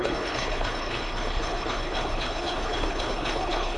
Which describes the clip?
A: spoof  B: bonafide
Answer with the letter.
A